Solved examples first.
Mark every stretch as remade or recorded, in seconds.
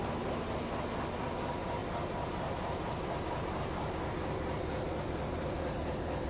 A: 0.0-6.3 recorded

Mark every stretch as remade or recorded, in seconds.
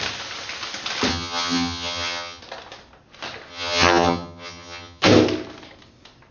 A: 0.0-1.1 recorded; 1.1-2.4 remade; 2.4-3.5 recorded; 3.5-5.0 remade; 5.0-6.3 recorded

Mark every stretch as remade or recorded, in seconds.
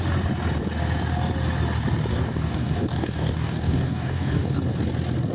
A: 0.0-2.1 recorded; 2.1-4.6 remade; 4.6-5.3 recorded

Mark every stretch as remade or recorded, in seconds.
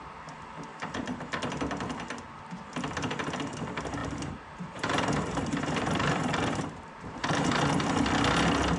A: 0.0-0.7 recorded; 0.7-1.2 remade; 1.2-4.0 recorded; 4.0-7.6 remade; 7.6-8.8 recorded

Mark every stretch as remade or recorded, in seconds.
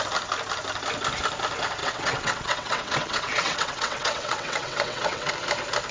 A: 0.0-1.8 recorded; 1.8-5.3 remade; 5.3-5.9 recorded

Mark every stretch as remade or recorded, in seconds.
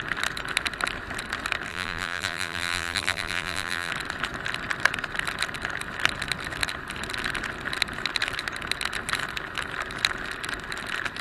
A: 0.0-1.7 recorded; 1.7-3.9 remade; 3.9-11.2 recorded